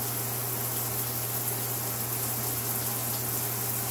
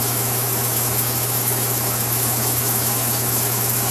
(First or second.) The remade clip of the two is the second